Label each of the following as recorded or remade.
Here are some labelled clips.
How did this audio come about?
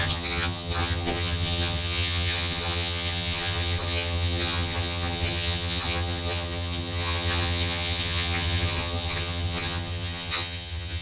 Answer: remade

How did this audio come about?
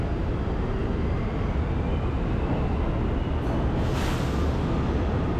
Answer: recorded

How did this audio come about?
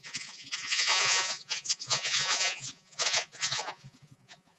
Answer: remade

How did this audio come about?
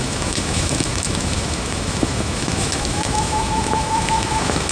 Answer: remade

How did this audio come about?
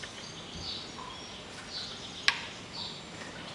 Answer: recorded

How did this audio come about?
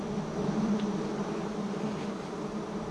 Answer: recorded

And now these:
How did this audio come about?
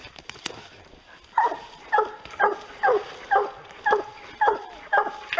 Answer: recorded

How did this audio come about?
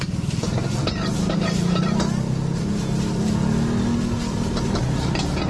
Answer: recorded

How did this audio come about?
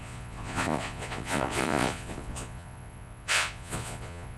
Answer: remade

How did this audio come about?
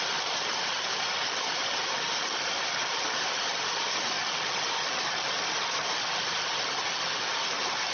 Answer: recorded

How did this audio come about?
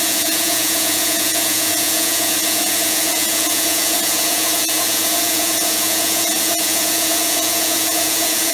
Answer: remade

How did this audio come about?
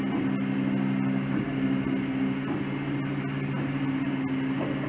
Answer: recorded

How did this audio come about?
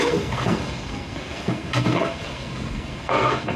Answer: remade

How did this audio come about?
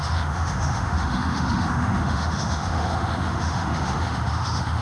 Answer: remade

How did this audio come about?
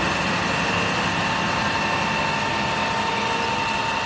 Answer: recorded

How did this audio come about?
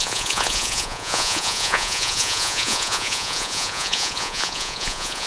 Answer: remade